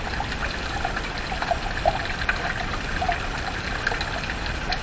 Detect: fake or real real